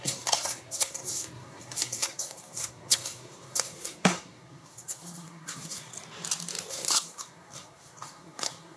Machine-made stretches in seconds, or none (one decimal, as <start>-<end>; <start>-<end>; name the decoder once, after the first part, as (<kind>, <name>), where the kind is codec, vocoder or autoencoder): 0.0-5.9 (codec, SNAC); 6.7-8.8